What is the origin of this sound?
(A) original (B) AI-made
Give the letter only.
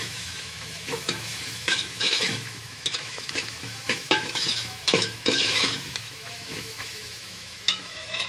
B